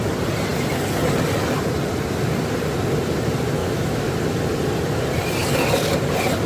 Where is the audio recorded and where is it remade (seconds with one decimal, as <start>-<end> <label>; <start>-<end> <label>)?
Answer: 0.0-3.6 recorded; 3.6-4.1 remade; 4.1-6.5 recorded